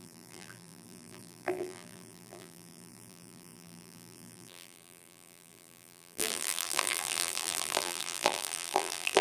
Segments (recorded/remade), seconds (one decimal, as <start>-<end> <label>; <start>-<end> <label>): 0.0-9.2 remade